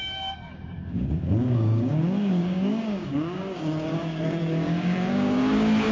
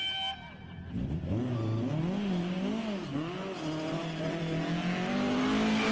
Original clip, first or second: second